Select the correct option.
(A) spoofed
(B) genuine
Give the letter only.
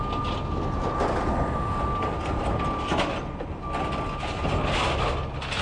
B